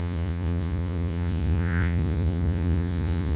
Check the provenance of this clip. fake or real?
fake